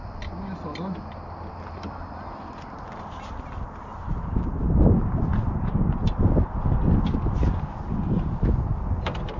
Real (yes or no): yes